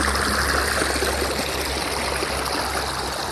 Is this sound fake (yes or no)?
no